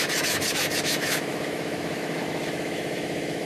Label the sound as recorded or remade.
remade